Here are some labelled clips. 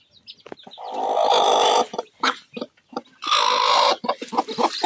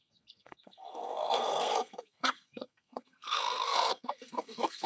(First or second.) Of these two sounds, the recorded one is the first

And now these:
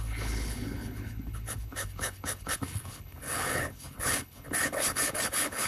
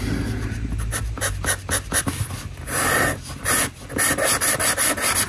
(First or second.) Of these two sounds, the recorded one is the second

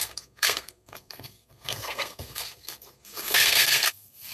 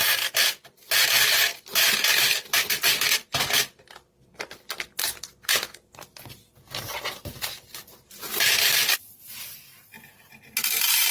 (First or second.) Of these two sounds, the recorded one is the second